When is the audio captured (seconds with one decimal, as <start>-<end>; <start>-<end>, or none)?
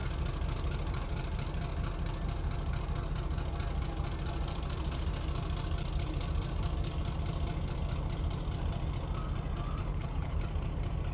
0.0-9.9; 10.4-11.1